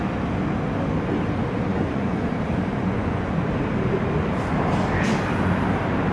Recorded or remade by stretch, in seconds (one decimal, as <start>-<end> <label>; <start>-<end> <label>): 0.0-1.7 recorded; 1.7-2.3 remade; 2.3-2.7 recorded; 2.7-3.5 remade; 3.5-6.1 recorded